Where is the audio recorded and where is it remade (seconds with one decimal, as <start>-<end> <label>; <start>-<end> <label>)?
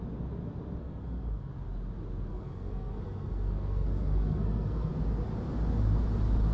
0.0-0.8 recorded; 0.8-1.5 remade; 1.5-2.3 recorded; 2.3-4.9 remade; 4.9-6.5 recorded